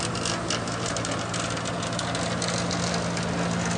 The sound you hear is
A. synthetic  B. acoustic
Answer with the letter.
B